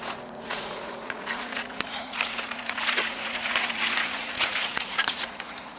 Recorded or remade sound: remade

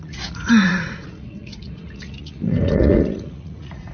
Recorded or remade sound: remade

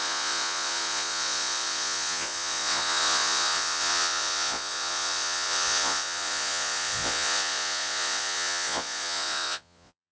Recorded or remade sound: remade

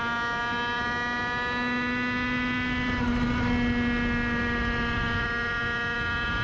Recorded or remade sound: recorded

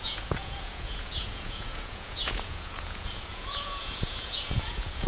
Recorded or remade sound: remade